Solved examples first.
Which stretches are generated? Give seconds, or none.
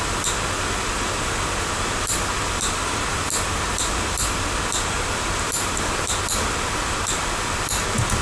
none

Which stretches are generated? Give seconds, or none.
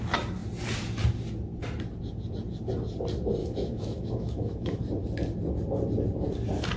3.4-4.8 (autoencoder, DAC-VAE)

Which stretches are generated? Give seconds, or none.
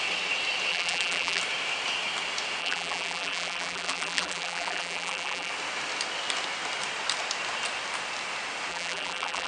0.7-1.4 (vocoder, BigVGAN v2); 2.6-5.5; 8.7-9.5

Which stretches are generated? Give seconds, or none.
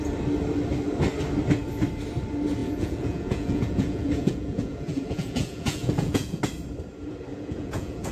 2.6-6.4 (vocoder, Vocos); 7.3-8.1